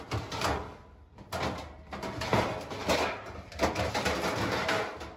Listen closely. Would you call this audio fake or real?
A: real